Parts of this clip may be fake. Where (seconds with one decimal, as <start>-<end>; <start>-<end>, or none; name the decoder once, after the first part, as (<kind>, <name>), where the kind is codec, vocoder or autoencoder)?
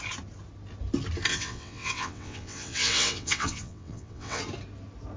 1.3-4.4 (vocoder, WaveNeXt)